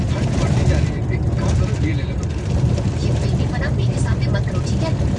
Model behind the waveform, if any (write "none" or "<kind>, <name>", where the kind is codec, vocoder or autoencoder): none